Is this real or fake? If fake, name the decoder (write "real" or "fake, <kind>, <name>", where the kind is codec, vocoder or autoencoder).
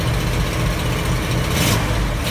real